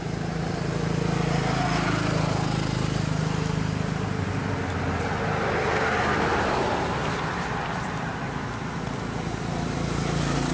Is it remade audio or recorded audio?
recorded